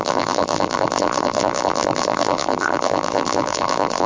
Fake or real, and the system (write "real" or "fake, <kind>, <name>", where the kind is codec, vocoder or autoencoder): fake, vocoder, BigVGAN v2